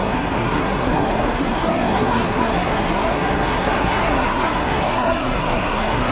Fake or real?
fake